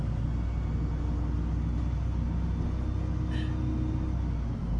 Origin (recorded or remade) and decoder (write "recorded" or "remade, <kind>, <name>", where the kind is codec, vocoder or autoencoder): recorded